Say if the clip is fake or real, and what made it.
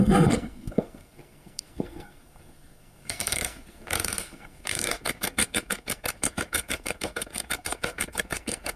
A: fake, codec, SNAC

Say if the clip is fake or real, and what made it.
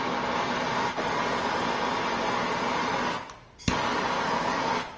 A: real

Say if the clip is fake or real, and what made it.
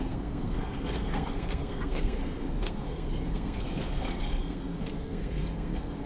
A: fake, codec, SNAC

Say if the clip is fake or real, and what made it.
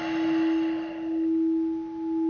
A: real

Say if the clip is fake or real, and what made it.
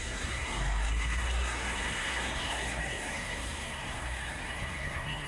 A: fake, codec, SNAC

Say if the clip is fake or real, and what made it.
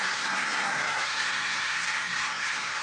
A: fake, codec, SNAC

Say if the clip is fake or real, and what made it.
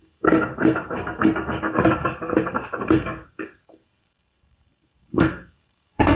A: fake, codec, SNAC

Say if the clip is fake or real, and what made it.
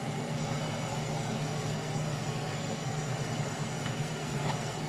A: fake, codec, SNAC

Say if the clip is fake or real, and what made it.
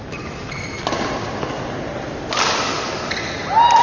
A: real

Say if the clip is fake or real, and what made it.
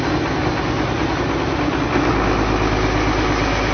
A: real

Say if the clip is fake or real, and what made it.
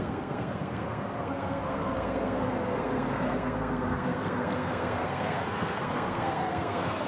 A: fake, codec, SNAC